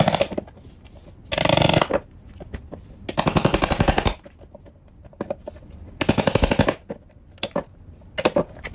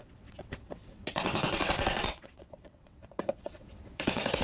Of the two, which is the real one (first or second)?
first